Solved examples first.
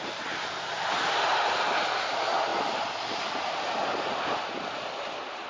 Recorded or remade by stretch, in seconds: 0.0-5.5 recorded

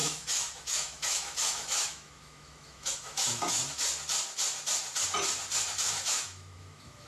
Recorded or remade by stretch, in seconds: 0.0-3.6 remade; 3.6-5.8 recorded; 5.8-7.1 remade

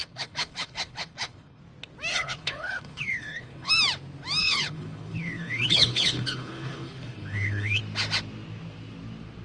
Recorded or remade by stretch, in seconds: 0.0-1.6 remade; 1.6-2.1 recorded; 2.1-3.7 remade; 3.7-4.4 recorded; 4.4-7.8 remade; 7.8-9.4 recorded

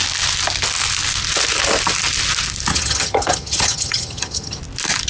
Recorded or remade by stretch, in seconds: 0.0-2.7 recorded; 2.7-4.6 remade; 4.6-5.1 recorded